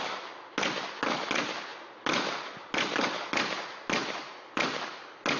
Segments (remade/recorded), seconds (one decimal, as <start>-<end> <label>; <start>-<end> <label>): 0.0-4.0 recorded; 4.0-4.5 remade; 4.5-5.4 recorded